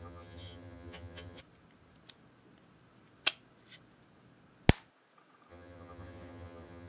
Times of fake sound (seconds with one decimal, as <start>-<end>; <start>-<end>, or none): 0.0-1.4; 5.5-6.9

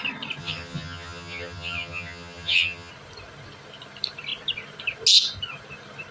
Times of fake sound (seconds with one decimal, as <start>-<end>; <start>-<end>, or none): 0.4-2.9

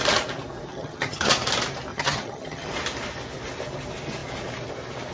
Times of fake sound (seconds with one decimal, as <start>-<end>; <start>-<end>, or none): 0.7-1.3; 1.9-2.7

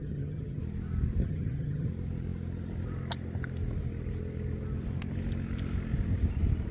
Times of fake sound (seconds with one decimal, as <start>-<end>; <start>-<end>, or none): 0.0-0.6; 1.2-1.9